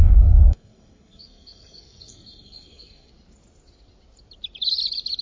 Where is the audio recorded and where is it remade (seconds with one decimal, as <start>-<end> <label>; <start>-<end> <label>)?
0.0-3.1 remade; 3.1-5.2 recorded